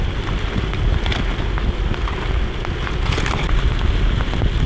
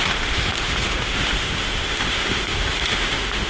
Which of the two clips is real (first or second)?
first